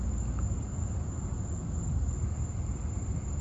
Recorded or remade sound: recorded